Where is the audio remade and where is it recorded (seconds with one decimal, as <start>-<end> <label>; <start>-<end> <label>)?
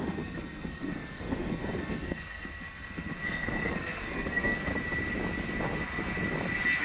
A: 0.0-4.7 remade; 4.7-6.8 recorded